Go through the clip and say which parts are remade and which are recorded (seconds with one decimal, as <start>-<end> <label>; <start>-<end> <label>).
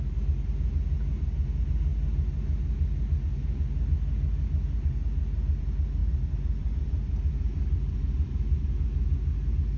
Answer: 0.0-6.0 recorded; 6.0-8.6 remade; 8.6-9.8 recorded